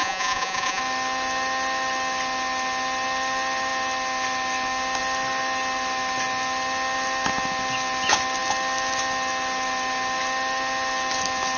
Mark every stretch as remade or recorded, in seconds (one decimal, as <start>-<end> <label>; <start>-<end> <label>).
0.0-0.8 remade; 0.8-11.6 recorded